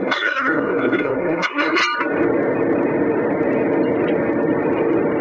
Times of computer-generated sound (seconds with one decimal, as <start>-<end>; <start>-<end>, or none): 0.0-1.8